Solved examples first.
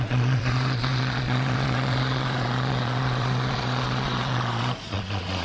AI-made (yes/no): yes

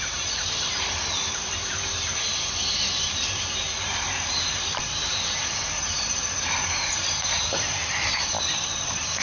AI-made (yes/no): yes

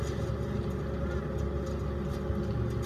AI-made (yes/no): no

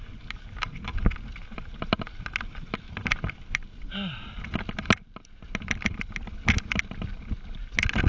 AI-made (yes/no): no